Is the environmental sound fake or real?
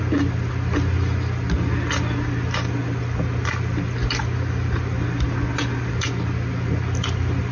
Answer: real